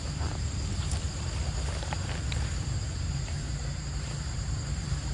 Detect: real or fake real